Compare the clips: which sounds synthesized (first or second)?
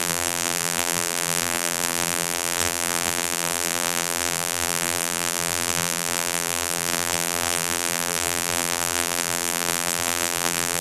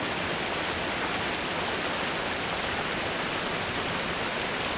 first